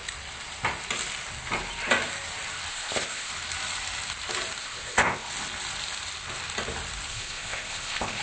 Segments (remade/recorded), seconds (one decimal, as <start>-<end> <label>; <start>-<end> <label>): 0.0-2.7 recorded; 2.7-3.3 remade; 3.3-4.6 recorded; 4.6-5.3 remade; 5.3-7.1 recorded; 7.1-8.2 remade